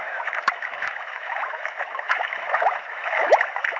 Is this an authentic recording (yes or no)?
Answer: no